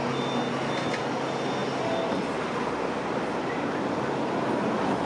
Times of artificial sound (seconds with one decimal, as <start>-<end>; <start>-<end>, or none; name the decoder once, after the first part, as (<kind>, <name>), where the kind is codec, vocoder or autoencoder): none